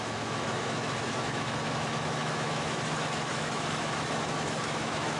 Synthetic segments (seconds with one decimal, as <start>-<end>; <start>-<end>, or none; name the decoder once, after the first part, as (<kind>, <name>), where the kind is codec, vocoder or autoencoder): 0.0-5.2 (autoencoder, DAC-VAE)